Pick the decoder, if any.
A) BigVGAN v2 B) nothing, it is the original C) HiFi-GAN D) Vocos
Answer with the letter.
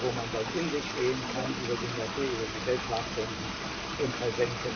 B